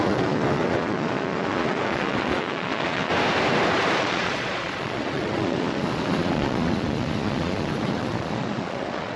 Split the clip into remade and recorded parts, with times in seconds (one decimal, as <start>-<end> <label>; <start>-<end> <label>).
0.0-3.1 remade; 3.1-4.0 recorded; 4.0-9.2 remade